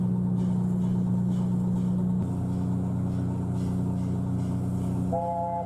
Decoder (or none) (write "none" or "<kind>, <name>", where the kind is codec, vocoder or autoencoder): none